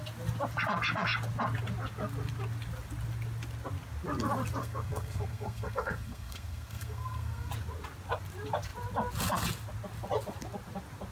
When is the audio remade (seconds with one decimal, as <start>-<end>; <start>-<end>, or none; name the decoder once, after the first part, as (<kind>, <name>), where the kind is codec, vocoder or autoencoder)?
4.6-7.5 (codec, SNAC)